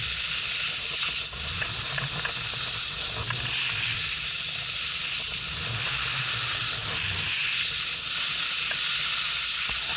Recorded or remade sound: recorded